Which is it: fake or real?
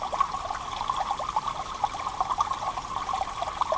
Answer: real